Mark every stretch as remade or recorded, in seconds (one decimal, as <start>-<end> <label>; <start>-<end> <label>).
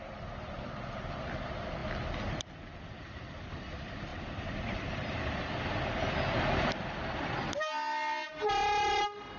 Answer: 0.0-4.1 recorded; 4.1-5.3 remade; 5.3-9.4 recorded